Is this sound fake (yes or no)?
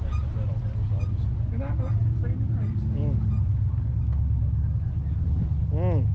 no